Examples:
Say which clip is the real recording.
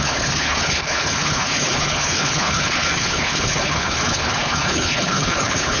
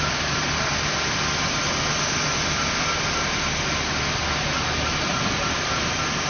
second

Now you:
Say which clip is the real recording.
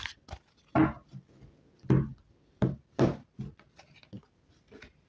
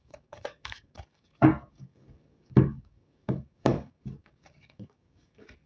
first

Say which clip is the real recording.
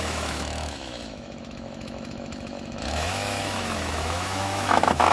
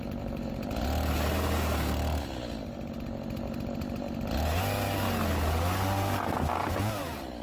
second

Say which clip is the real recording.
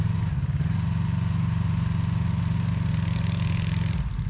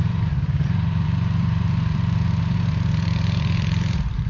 first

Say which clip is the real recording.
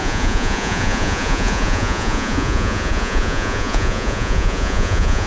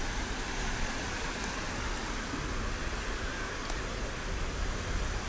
second